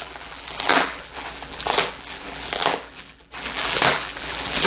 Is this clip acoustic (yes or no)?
no